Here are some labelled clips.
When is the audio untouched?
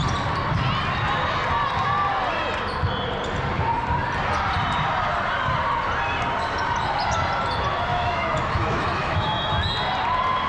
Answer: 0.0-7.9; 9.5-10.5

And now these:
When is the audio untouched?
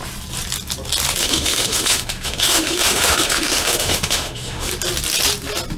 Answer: 0.0-1.2; 4.7-5.8